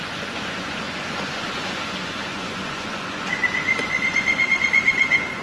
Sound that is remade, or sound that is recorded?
remade